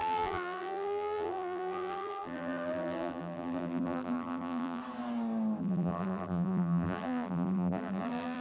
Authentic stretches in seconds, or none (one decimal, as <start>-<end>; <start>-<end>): 4.8-5.6